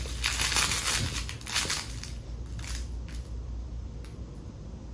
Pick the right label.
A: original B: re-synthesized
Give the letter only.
A